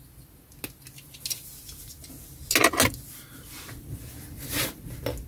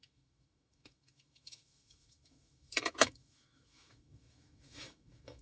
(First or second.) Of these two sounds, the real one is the first